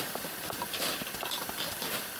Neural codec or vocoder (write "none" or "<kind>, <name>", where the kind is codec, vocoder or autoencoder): none